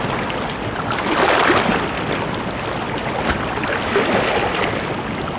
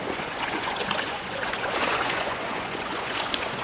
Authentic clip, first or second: first